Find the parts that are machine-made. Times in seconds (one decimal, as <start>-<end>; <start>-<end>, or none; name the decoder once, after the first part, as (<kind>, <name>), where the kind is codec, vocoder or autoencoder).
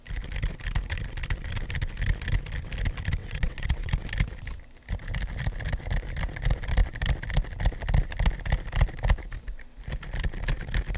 3.2-3.9 (vocoder, WaveNeXt)